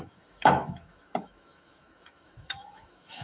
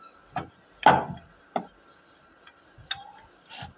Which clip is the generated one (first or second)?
first